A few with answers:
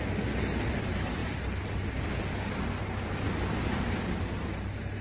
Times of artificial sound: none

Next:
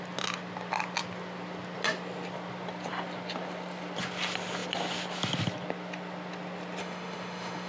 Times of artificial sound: 6.8-7.7 (autoencoder, DAC-VAE)